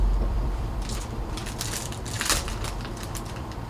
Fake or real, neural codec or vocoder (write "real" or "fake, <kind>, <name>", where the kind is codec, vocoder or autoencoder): fake, vocoder, BigVGAN v2